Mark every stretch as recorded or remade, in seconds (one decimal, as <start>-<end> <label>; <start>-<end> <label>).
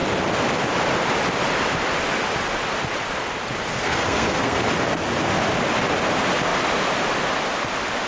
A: 0.0-3.8 recorded; 3.8-4.6 remade; 4.6-8.1 recorded